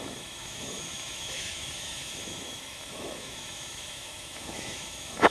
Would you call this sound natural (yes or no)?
no